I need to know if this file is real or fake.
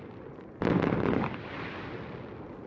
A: real